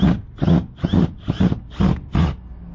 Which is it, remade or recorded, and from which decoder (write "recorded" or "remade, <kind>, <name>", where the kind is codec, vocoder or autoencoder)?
recorded